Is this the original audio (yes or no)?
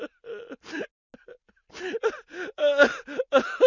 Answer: yes